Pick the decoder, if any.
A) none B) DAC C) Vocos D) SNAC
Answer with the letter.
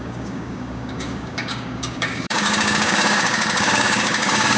B